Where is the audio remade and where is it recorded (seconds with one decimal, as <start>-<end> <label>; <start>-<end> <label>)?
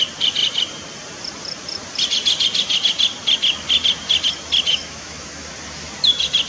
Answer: 0.0-4.7 recorded; 4.7-5.5 remade; 5.5-6.5 recorded